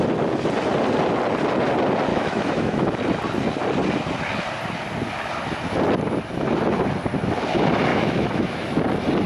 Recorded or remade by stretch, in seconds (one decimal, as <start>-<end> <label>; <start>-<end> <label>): 0.0-2.1 recorded; 2.1-2.9 remade; 2.9-7.9 recorded; 7.9-8.8 remade; 8.8-9.3 recorded